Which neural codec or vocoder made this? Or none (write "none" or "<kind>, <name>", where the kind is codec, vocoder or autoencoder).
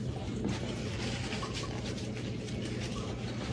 none